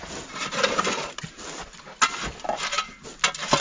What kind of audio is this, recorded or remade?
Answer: recorded